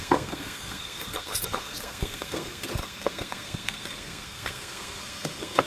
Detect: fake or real fake